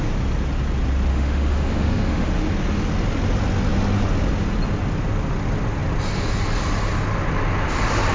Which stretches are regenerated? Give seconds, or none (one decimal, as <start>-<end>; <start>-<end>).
1.1-2.3